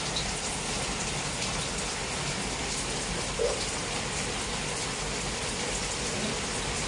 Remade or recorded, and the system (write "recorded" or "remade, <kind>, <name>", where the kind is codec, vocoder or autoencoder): recorded